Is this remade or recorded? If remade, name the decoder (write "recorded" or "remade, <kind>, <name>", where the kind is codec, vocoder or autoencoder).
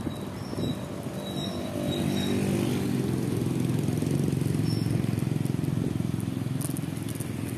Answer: recorded